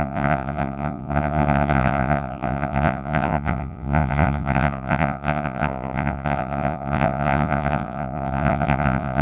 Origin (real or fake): fake